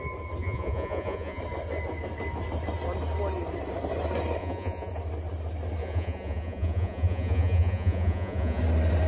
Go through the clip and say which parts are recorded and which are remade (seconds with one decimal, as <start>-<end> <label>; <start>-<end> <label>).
0.0-0.4 recorded; 0.4-1.4 remade; 1.4-4.4 recorded; 4.4-4.9 remade; 4.9-5.8 recorded; 5.8-8.6 remade; 8.6-9.1 recorded

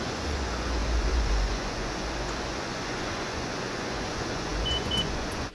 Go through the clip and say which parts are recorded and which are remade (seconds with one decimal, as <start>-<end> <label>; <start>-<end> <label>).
0.0-5.5 remade

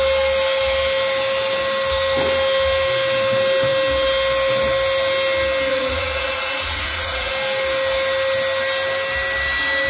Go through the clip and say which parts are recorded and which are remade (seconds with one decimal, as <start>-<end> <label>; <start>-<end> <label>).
0.0-5.7 recorded; 5.7-7.3 remade; 7.3-9.9 recorded

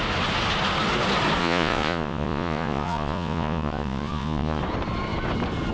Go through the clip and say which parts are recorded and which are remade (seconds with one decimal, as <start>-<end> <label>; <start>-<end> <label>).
0.0-1.4 recorded; 1.4-4.6 remade; 4.6-5.7 recorded

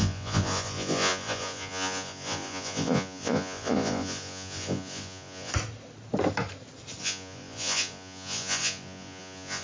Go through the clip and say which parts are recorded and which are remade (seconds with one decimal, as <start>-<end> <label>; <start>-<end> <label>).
0.0-5.5 remade; 5.5-7.0 recorded; 7.0-9.6 remade

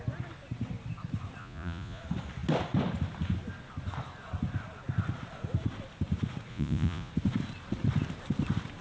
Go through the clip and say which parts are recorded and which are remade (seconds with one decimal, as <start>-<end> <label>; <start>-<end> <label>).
0.0-1.4 recorded; 1.4-2.0 remade; 2.0-6.5 recorded; 6.5-7.1 remade; 7.1-8.8 recorded

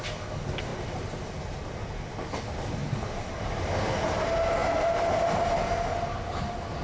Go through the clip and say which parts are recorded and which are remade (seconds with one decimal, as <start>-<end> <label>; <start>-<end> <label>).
0.0-6.8 recorded

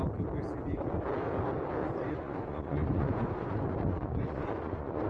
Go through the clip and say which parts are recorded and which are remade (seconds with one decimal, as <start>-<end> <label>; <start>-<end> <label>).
0.0-1.8 recorded; 1.8-5.1 remade